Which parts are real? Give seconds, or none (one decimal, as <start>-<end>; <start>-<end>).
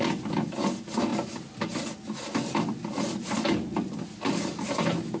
0.0-5.2